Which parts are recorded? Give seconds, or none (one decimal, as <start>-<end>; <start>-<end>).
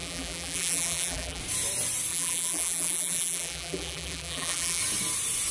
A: 1.4-2.1; 4.8-5.5